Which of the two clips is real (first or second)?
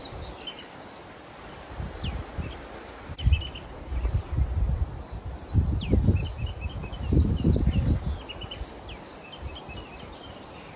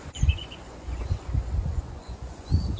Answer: first